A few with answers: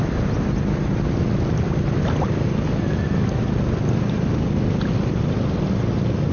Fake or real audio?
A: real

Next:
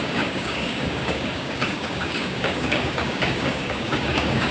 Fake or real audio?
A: fake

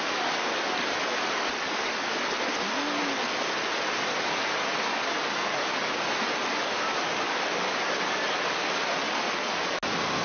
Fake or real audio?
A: real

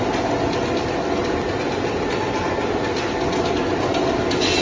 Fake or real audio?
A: real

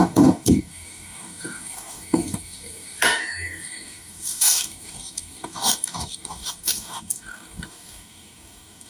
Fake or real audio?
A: fake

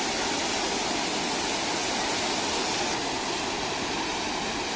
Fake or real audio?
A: real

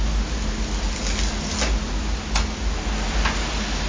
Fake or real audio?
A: real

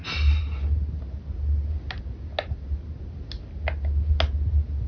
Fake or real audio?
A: real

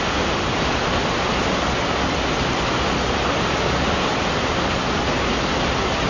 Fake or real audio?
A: real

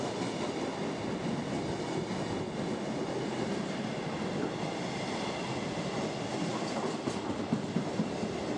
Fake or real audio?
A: real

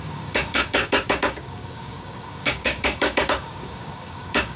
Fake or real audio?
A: fake